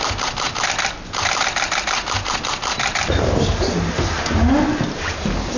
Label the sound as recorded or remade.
recorded